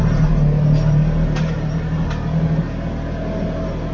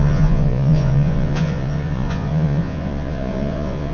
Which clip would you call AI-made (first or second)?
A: second